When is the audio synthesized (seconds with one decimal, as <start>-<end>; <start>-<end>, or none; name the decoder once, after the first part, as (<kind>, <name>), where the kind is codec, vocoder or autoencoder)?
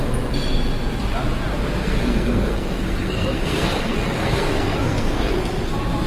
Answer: 1.8-5.4 (codec, SNAC)